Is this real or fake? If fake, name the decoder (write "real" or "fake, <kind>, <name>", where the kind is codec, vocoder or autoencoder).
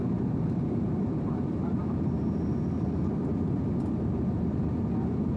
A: fake, vocoder, BigVGAN v2